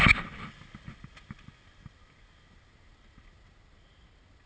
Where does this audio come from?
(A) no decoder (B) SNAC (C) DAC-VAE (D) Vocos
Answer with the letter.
A